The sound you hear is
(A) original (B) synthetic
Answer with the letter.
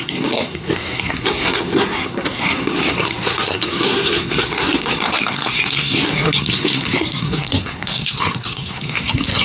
B